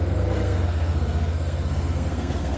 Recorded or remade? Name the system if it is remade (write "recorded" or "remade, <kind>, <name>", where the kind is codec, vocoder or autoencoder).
remade, codec, SNAC